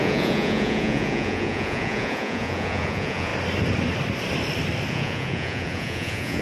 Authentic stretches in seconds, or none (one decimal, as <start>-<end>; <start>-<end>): 3.3-4.9

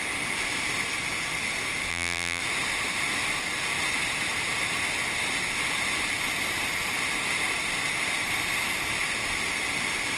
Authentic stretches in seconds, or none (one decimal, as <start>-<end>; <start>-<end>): 0.0-1.9; 2.4-10.2